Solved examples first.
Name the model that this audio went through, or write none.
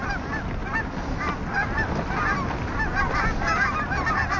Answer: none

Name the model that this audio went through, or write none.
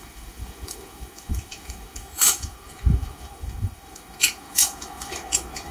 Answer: autoencoder, DAC-VAE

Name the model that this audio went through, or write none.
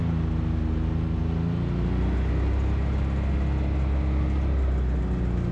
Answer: none